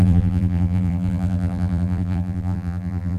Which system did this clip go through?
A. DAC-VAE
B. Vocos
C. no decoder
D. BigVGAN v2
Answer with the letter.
D